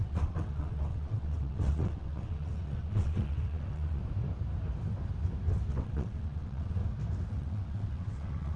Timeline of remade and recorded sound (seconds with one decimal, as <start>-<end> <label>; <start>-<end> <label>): 0.0-4.0 remade; 4.0-5.7 recorded; 5.7-6.8 remade; 6.8-7.3 recorded; 7.3-8.6 remade